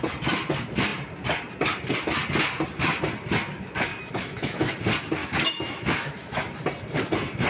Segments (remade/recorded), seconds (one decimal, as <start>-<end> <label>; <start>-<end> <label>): 0.0-3.9 recorded; 3.9-4.7 remade; 4.7-5.2 recorded; 5.2-6.4 remade; 6.4-7.5 recorded